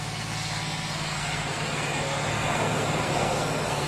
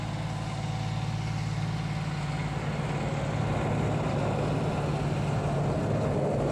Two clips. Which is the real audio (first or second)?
second